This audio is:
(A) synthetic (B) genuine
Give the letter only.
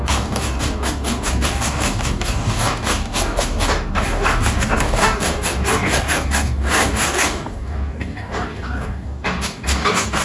A